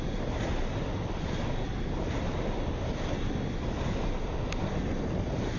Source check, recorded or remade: recorded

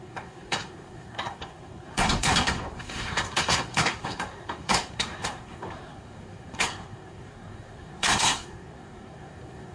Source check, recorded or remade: remade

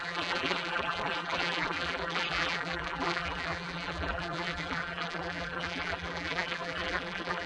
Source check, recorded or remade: remade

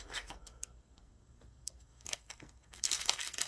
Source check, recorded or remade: remade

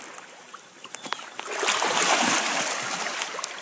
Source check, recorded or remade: remade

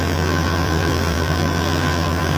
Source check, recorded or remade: remade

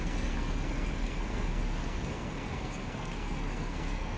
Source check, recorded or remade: remade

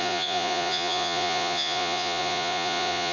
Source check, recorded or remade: remade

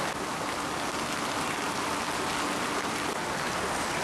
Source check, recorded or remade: recorded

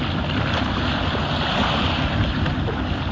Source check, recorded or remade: recorded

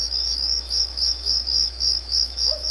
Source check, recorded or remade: remade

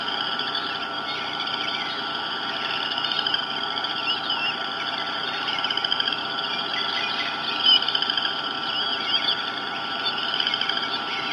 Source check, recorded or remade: remade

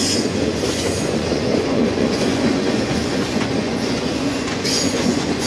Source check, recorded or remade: remade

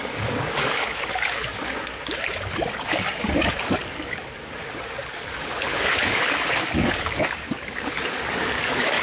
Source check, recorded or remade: remade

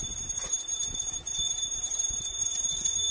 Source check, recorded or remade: remade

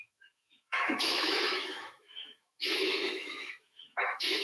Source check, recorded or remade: remade